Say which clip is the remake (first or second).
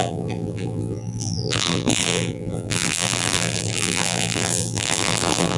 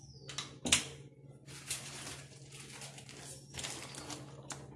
first